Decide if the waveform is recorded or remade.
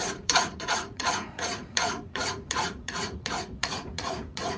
remade